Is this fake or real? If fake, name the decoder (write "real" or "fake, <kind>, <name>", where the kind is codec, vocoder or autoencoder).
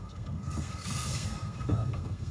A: fake, codec, SNAC